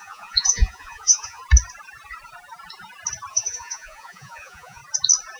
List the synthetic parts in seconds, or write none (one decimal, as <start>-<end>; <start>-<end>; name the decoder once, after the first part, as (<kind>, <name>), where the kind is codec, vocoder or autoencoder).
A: 0.0-1.4 (vocoder, Vocos); 3.3-4.8